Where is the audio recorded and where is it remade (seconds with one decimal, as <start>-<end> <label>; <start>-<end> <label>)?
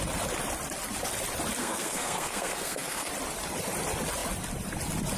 0.0-1.6 recorded; 1.6-3.1 remade; 3.1-5.2 recorded